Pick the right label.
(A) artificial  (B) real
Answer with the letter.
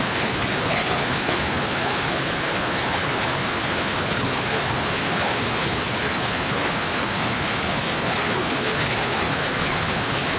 A